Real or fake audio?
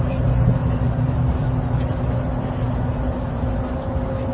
real